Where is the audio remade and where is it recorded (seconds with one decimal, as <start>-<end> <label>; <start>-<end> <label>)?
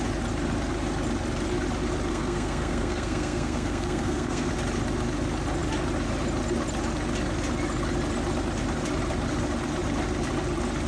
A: 0.0-2.1 recorded; 2.1-4.5 remade; 4.5-10.9 recorded